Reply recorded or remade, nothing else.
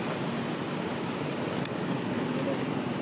recorded